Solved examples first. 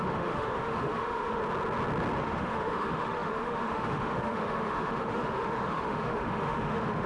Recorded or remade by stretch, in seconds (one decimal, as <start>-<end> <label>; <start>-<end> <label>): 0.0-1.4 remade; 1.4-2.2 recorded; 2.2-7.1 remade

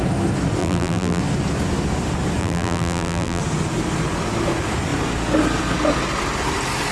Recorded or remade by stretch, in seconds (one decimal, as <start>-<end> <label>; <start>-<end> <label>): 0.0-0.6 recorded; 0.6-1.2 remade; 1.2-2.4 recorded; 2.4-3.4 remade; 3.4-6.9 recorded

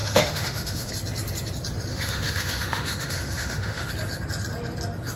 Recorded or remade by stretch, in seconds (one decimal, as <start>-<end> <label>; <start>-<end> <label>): 0.0-0.9 remade; 0.9-1.9 recorded; 1.9-3.9 remade; 3.9-5.2 recorded

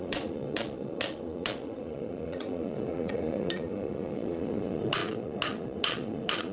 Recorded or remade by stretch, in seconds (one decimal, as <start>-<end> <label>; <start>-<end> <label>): 0.0-6.5 remade